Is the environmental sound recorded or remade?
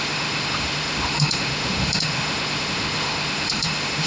remade